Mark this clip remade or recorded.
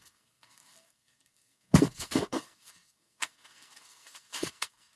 remade